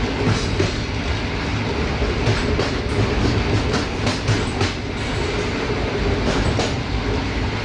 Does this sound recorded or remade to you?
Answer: recorded